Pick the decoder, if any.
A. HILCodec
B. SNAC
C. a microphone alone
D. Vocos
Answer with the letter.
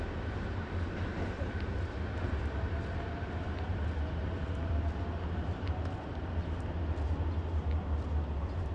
C